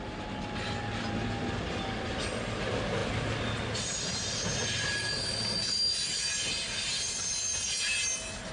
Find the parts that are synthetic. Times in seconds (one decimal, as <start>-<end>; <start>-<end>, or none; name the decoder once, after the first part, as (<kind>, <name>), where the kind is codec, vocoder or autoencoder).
none